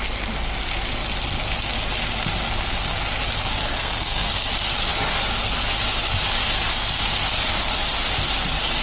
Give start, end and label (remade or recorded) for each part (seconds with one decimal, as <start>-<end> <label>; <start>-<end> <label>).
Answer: 0.0-3.8 recorded; 3.8-4.3 remade; 4.3-8.8 recorded